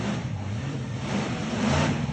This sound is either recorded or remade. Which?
remade